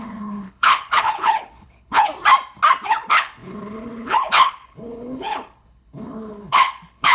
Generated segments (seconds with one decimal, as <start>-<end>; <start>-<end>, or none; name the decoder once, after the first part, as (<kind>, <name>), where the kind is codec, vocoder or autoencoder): 0.0-2.1 (codec, HILCodec); 2.9-7.1